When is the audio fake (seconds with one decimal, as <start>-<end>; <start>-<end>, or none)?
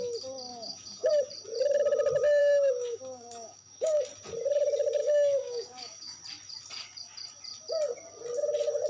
0.5-1.1; 2.4-4.0; 5.0-6.2